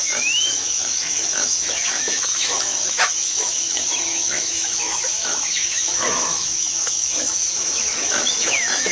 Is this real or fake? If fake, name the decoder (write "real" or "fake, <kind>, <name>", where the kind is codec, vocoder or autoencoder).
fake, autoencoder, DAC-VAE